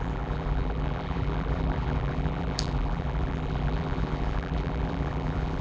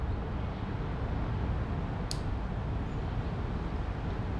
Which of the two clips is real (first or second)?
second